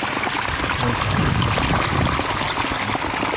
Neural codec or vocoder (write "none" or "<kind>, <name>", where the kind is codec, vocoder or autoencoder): none